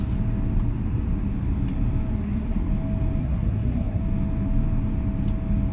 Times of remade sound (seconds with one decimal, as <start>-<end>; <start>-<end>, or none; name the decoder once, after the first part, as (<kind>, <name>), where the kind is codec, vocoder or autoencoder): 2.1-2.7 (codec, SNAC); 3.2-4.0